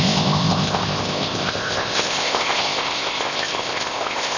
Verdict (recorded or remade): remade